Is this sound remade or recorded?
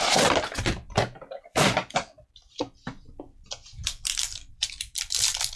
remade